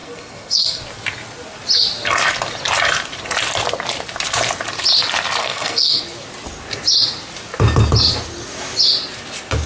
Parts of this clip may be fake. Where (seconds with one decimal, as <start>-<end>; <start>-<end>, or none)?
0.0-0.8; 5.4-6.0